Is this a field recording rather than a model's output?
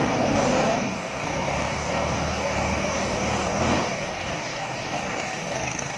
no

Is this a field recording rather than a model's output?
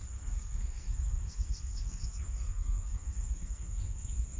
no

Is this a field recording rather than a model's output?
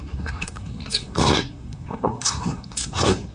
no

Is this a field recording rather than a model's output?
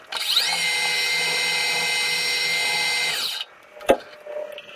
yes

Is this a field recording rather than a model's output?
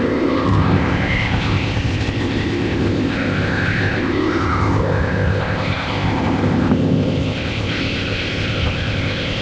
no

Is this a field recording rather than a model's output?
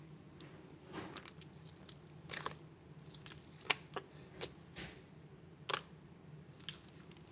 yes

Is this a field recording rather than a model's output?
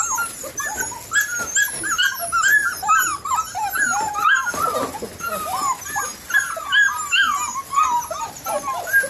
yes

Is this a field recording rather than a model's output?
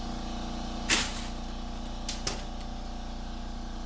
yes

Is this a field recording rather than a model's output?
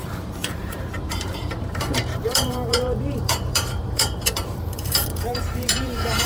no